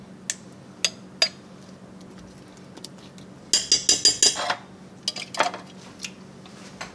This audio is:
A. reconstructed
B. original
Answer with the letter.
B